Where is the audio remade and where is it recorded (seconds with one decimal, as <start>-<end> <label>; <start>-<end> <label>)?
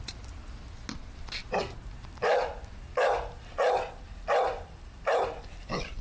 0.0-6.0 recorded